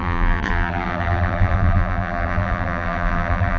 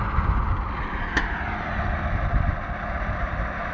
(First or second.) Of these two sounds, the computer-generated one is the first